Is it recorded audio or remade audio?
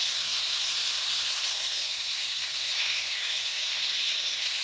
remade